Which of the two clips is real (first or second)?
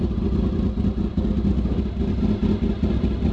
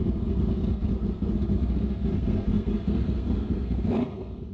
first